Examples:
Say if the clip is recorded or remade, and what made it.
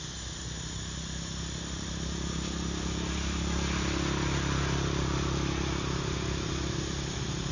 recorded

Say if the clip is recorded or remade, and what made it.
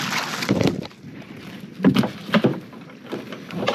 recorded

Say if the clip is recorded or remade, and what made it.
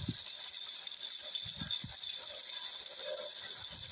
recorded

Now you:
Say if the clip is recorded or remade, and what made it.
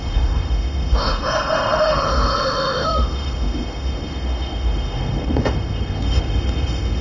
remade, autoencoder, DAC-VAE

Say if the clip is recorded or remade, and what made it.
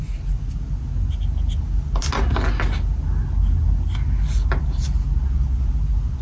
recorded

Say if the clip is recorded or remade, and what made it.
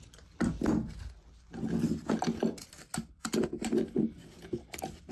recorded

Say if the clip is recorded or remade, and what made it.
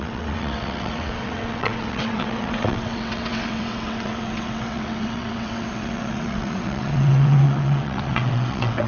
remade, vocoder, WaveNeXt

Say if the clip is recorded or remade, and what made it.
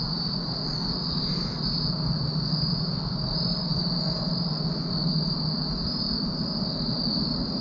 recorded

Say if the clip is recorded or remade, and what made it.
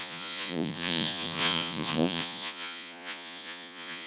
remade, vocoder, Vocos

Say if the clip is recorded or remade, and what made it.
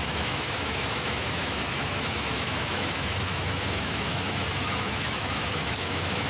remade, autoencoder, DAC-VAE